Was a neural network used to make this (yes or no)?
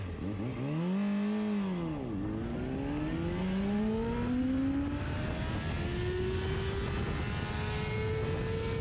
no